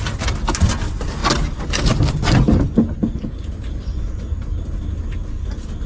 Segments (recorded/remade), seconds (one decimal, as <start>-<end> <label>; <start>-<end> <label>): 0.0-5.9 recorded